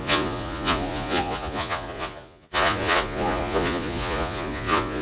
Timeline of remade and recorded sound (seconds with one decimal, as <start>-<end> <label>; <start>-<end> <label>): 0.0-5.0 remade